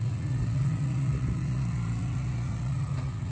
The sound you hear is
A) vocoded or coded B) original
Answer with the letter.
A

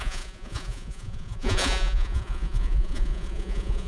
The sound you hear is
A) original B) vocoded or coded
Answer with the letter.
B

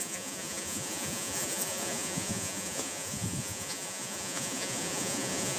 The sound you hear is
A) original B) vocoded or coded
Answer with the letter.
B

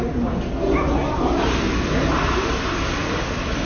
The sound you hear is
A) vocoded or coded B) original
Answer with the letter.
B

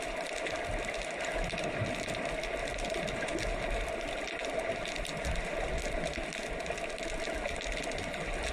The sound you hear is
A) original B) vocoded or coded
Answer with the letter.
A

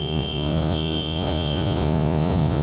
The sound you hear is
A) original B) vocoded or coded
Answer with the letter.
B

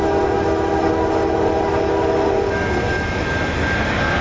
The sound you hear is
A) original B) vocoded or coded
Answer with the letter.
A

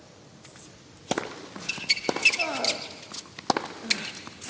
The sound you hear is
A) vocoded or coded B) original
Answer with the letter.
B